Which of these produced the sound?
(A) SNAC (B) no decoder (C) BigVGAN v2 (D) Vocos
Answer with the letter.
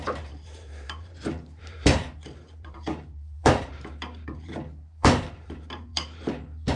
C